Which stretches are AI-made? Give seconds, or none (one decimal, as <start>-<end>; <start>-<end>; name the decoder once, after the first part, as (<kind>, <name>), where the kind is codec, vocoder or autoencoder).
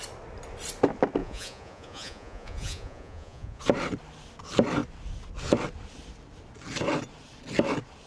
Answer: 1.2-3.6 (vocoder, Vocos)